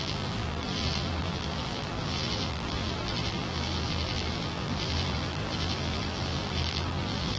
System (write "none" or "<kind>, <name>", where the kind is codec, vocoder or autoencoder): vocoder, BigVGAN v2